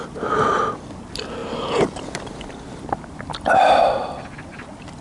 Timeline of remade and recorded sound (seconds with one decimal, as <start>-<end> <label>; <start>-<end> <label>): 0.0-5.0 recorded